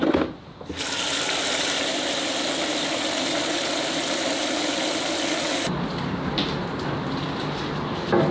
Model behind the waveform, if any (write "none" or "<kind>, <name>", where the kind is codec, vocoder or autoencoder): none